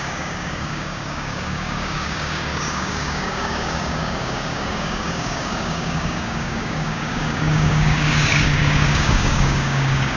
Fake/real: fake